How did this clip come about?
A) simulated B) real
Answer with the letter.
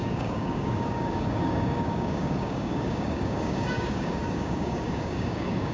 A